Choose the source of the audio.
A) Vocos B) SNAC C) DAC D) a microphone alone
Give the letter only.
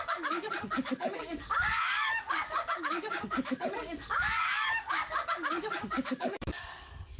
C